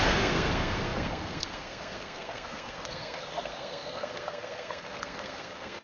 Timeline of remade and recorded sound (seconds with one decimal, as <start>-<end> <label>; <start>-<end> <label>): 0.0-5.8 remade